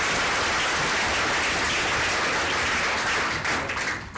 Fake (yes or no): no